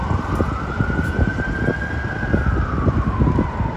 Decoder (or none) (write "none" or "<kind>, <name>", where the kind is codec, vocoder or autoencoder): none